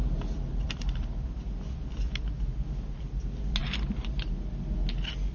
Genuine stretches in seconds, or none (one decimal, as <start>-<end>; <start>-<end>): 0.0-5.3